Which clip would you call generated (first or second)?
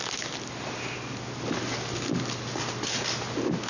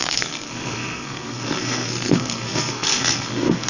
second